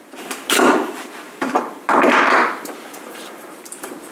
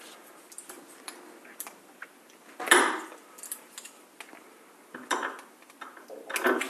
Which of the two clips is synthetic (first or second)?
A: first